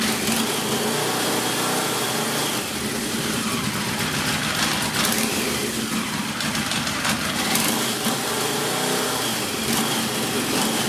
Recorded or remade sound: recorded